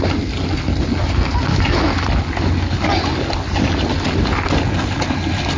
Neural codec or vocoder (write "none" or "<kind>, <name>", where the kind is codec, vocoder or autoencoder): none